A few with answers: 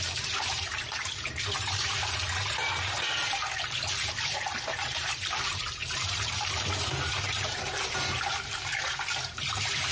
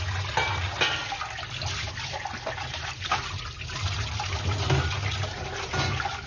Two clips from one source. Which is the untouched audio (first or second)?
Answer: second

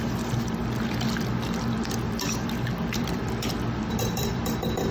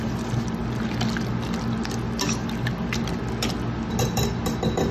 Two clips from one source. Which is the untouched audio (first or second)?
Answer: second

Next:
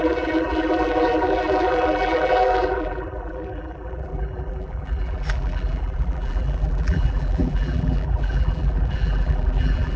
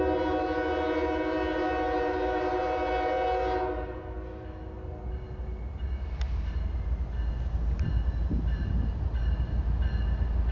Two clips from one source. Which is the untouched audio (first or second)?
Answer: second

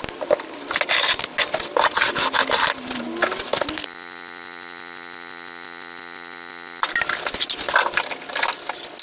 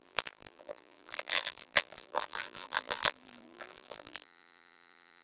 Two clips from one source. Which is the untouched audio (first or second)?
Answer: first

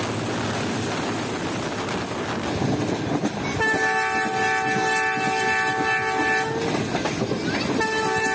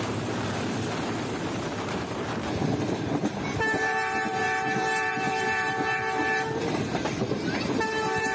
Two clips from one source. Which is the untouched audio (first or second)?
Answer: first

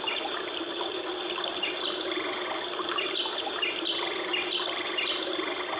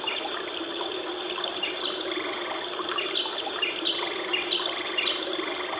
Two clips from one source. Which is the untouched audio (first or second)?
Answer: first